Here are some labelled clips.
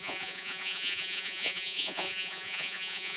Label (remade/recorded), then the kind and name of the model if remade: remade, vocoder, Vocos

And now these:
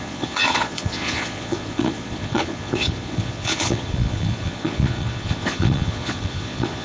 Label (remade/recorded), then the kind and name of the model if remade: remade, vocoder, Vocos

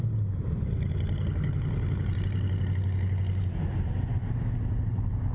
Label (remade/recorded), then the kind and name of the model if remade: recorded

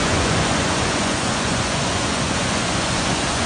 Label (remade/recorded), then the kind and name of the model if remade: remade, vocoder, Vocos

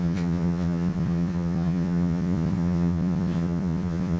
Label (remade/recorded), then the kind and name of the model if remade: remade, vocoder, Vocos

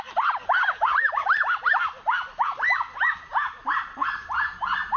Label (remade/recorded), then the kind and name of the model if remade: recorded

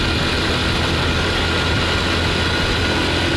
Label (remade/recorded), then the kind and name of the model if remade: recorded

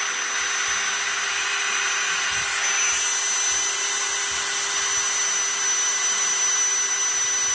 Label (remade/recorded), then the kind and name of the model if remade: recorded